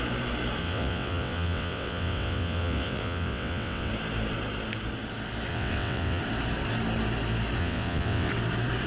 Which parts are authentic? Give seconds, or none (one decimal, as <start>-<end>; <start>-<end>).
0.0-0.6; 3.9-5.5; 6.2-7.6; 8.3-8.9